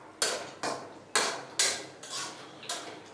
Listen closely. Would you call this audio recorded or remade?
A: recorded